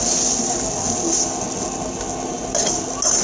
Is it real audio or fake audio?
real